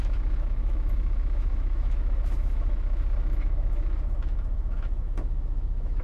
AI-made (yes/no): yes